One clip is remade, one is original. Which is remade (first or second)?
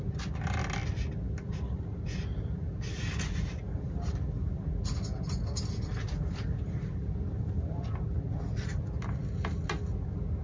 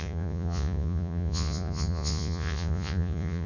second